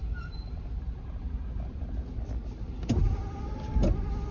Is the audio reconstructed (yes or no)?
no